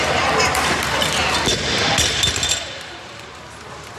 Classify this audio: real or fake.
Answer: real